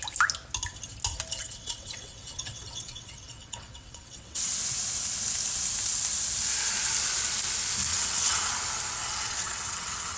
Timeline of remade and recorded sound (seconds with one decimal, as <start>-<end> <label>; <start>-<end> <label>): 0.0-1.4 recorded; 1.4-4.6 remade; 4.6-7.9 recorded; 7.9-8.5 remade; 8.5-9.0 recorded; 9.0-10.2 remade